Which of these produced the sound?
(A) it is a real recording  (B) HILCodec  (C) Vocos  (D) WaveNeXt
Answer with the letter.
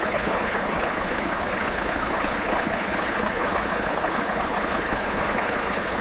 B